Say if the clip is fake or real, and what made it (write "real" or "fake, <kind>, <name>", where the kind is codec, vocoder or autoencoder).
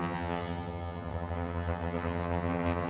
fake, vocoder, HiFi-GAN